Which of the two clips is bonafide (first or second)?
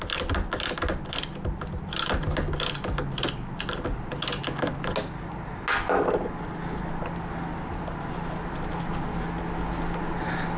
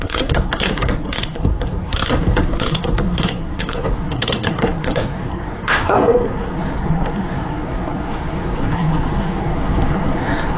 first